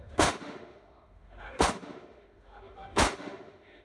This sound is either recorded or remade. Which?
remade